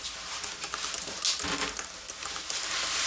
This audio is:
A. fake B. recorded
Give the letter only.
B